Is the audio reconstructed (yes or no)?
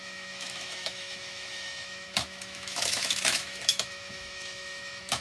yes